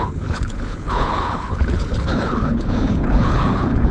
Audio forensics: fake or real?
fake